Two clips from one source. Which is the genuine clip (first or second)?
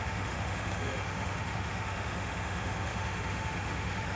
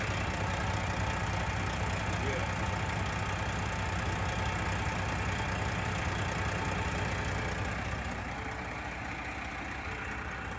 second